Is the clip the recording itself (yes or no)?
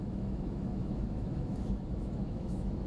no